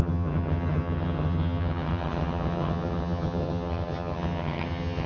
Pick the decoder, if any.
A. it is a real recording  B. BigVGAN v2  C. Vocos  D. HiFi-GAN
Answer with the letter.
D